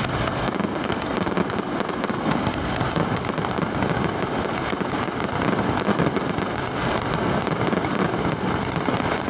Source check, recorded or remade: recorded